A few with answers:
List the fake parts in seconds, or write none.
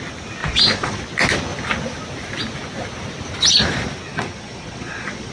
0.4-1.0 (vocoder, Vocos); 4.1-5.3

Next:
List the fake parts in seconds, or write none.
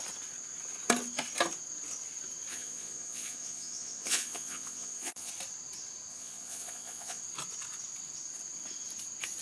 2.5-5.3 (vocoder, Vocos); 6.1-7.2